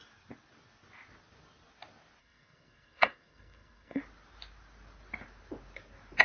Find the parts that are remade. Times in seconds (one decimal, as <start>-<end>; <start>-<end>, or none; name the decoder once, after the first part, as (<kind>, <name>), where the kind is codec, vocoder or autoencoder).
2.2-4.0 (codec, SNAC)